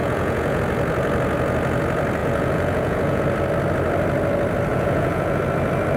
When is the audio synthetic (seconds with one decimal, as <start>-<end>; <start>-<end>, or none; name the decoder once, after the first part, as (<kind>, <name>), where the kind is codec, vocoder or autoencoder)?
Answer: 0.0-0.6 (vocoder, Vocos); 2.2-3.2; 4.7-5.4